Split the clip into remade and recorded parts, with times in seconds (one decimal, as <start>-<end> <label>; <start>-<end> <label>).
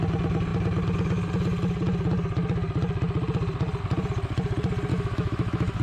0.0-4.9 recorded; 4.9-5.8 remade